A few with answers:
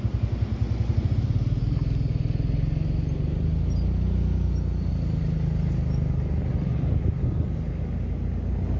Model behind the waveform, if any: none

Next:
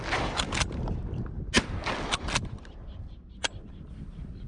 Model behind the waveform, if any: none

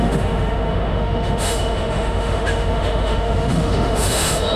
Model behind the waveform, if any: autoencoder, DAC-VAE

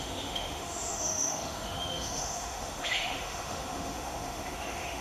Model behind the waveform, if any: autoencoder, DAC-VAE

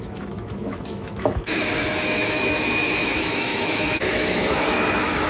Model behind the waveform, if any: autoencoder, DAC-VAE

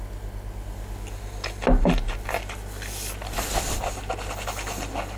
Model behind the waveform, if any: none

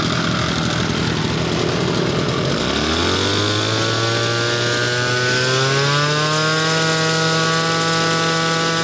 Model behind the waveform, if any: none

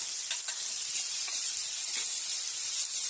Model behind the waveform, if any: none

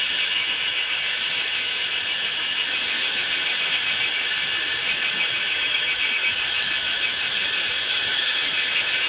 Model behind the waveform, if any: autoencoder, DAC-VAE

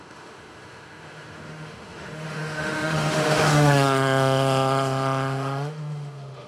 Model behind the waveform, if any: autoencoder, DAC-VAE